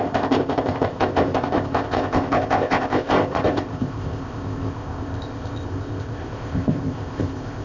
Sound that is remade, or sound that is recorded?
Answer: remade